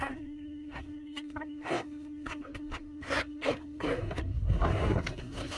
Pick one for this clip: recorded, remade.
remade